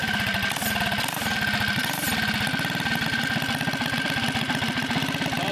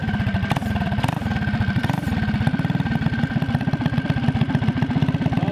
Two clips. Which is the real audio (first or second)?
first